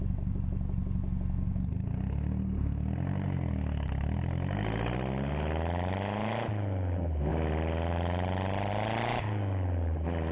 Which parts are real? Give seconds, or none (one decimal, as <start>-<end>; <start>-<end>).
0.0-10.3